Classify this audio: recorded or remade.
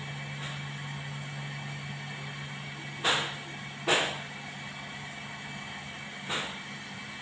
recorded